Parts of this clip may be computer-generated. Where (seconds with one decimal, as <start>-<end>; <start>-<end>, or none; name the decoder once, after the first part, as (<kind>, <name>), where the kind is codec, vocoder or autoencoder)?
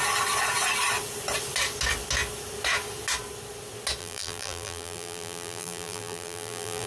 4.0-6.9 (vocoder, BigVGAN v2)